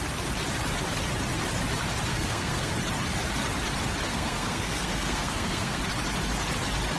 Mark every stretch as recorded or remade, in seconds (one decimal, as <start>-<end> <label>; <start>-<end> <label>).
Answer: 0.0-2.1 recorded; 2.1-2.7 remade; 2.7-4.1 recorded; 4.1-5.8 remade; 5.8-7.0 recorded